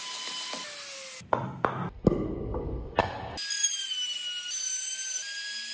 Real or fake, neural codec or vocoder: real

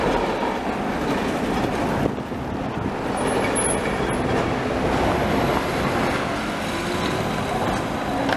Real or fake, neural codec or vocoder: real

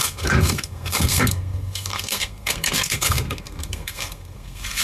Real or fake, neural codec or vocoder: fake, codec, SNAC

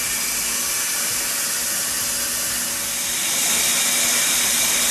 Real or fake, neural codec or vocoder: real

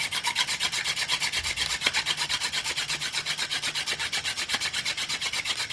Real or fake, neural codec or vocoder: real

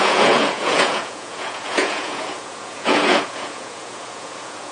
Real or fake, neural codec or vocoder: fake, vocoder, Vocos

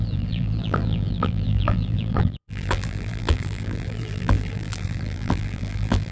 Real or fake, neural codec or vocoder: fake, vocoder, BigVGAN v2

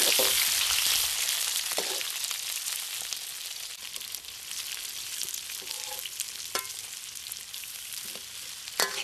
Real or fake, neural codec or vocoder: real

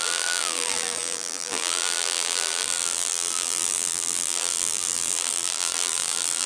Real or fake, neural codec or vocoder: fake, vocoder, BigVGAN v2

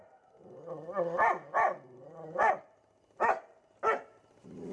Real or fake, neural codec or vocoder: real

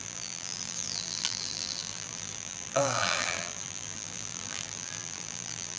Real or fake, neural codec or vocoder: fake, vocoder, BigVGAN v2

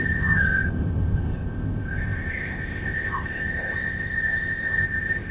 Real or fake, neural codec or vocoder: fake, codec, ZipCodec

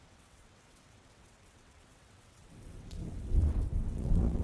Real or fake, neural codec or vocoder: fake, vocoder, WaveNeXt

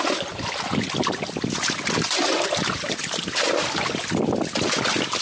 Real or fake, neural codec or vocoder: real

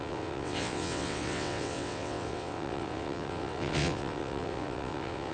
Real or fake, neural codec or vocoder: fake, vocoder, WaveNeXt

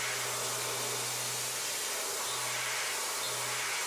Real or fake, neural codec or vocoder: real